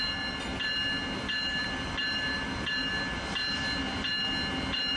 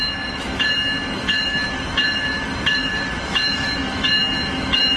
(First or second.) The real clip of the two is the first